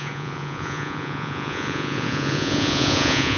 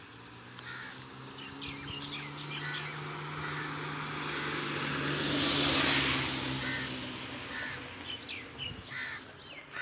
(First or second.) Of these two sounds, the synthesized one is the first